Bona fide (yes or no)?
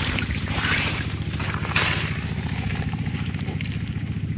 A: no